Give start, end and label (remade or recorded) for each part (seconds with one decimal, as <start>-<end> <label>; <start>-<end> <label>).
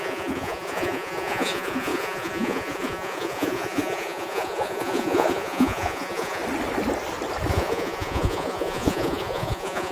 0.0-6.4 remade; 6.4-7.5 recorded; 7.5-9.9 remade